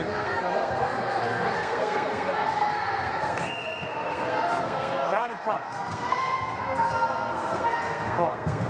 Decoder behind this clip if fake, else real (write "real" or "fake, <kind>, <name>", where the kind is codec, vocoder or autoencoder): fake, codec, SNAC